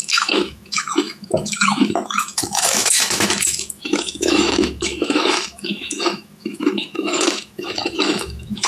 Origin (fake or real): fake